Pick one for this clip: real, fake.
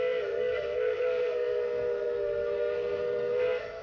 fake